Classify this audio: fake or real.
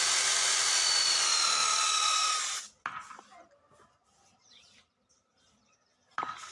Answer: real